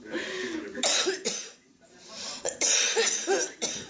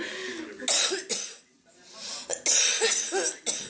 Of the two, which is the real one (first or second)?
second